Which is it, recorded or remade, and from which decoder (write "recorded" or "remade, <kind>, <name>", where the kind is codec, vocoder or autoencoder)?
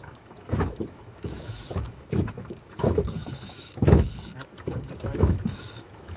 remade, autoencoder, DAC-VAE